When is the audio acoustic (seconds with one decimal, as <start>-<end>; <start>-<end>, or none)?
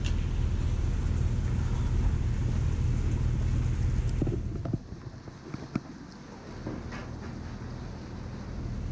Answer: 0.0-8.9